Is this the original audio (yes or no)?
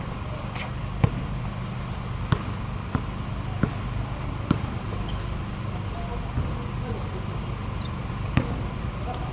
yes